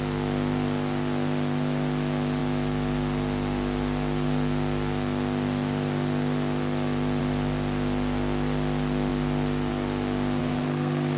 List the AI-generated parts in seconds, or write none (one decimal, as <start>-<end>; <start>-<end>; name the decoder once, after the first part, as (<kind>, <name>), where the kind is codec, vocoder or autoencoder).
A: 10.4-11.2 (codec, SNAC)